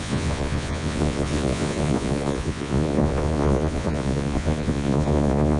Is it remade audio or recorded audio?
remade